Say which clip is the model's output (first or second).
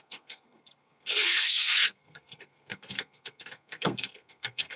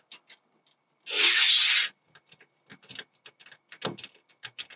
first